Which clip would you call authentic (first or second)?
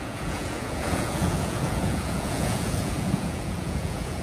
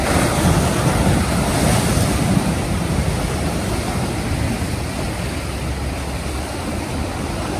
second